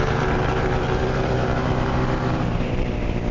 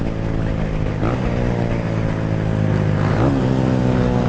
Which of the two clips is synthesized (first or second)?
first